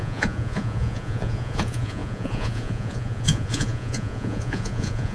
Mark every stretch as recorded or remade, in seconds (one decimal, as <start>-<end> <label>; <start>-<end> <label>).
0.0-5.1 remade